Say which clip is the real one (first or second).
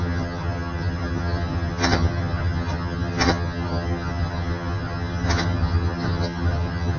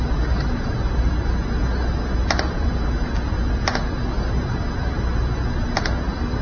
second